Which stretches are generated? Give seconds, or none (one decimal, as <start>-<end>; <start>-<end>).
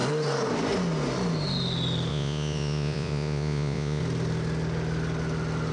2.1-4.0